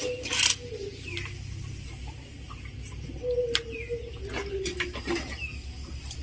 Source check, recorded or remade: recorded